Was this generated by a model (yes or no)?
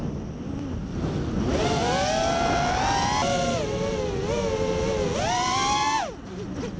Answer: no